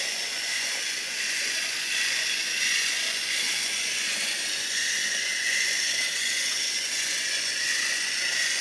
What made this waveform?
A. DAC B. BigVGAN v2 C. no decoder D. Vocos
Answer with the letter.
D